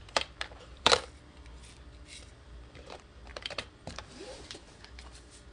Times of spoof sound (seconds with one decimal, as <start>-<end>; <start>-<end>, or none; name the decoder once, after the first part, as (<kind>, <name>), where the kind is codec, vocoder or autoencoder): 0.0-0.9 (vocoder, BigVGAN v2); 3.3-5.5